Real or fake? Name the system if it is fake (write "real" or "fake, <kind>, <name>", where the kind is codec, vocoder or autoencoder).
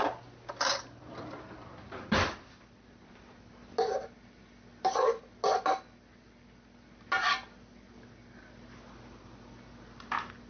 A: real